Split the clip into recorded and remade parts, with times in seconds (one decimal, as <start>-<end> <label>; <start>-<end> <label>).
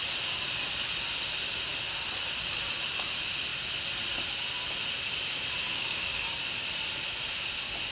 0.0-5.6 recorded; 5.6-6.4 remade; 6.4-7.9 recorded